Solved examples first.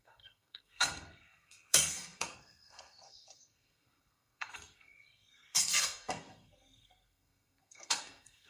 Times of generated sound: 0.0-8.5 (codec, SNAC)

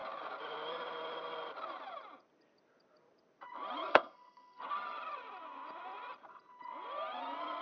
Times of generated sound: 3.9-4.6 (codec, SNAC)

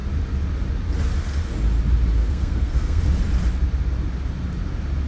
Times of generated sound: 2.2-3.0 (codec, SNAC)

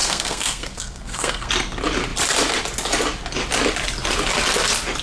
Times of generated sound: 0.0-1.5 (codec, SNAC)

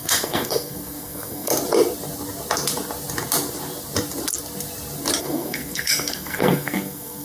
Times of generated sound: 0.0-1.5 (codec, SNAC); 5.2-7.2